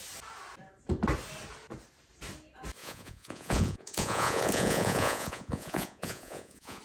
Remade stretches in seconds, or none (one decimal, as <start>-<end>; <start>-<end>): 2.8-6.8